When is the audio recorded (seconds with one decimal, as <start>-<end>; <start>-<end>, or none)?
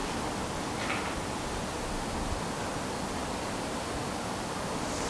0.0-5.1